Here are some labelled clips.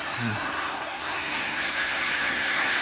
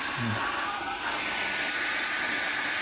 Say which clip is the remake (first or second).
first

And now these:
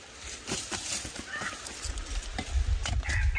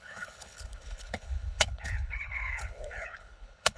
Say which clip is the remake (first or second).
second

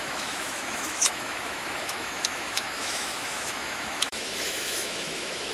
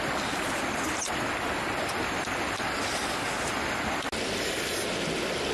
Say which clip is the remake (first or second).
first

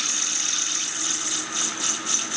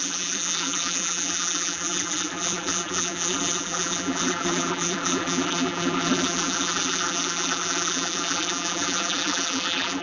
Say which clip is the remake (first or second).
second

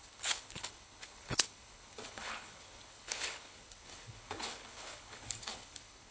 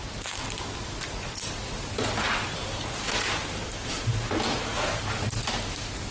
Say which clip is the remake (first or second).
first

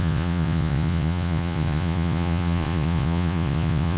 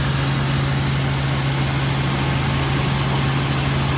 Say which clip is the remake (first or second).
first